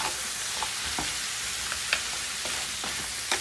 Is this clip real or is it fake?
real